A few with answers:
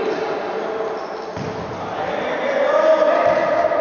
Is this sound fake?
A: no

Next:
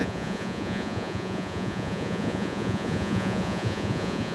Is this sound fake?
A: yes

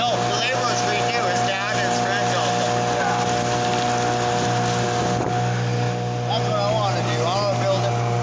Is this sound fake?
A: no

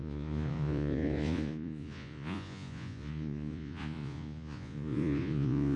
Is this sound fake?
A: yes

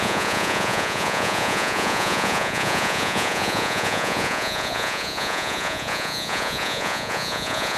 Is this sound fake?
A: yes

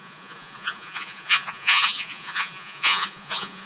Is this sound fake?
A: yes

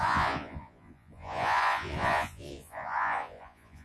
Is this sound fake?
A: yes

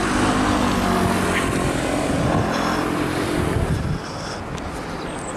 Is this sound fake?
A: no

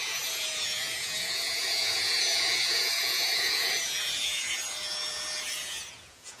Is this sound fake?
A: yes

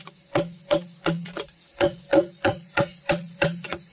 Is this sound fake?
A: yes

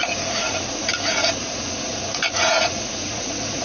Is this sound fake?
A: yes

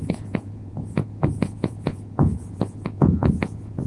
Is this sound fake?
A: yes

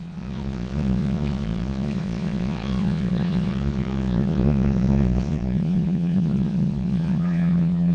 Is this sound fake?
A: yes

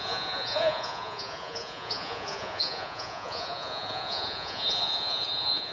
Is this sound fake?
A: yes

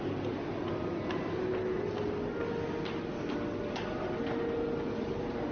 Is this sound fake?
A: no